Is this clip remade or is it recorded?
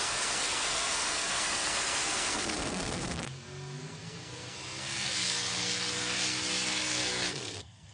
remade